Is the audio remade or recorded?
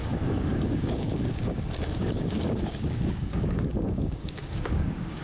remade